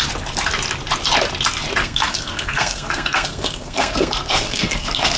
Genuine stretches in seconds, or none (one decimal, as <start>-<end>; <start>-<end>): 0.0-1.8